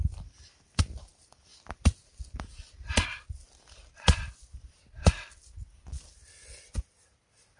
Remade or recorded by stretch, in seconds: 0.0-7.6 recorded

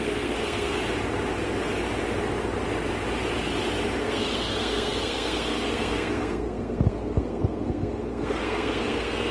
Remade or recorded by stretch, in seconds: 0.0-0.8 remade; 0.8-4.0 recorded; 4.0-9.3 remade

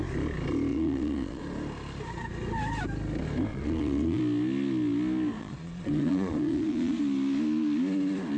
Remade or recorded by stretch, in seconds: 0.0-0.7 recorded; 0.7-1.4 remade; 1.4-3.5 recorded; 3.5-4.2 remade; 4.2-5.4 recorded; 5.4-7.0 remade; 7.0-8.4 recorded

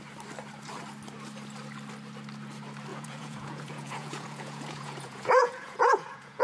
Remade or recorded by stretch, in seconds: 0.0-2.9 recorded; 2.9-6.4 remade

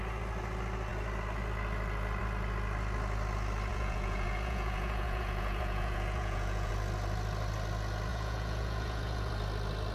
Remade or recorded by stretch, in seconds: 0.0-3.7 recorded; 3.7-6.7 remade; 6.7-8.1 recorded; 8.1-9.3 remade; 9.3-9.9 recorded